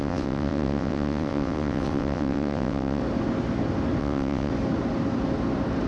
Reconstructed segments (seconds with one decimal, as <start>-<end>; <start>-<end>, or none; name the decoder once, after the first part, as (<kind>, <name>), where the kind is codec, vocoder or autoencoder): 0.0-3.0 (vocoder, WaveNeXt); 4.0-4.5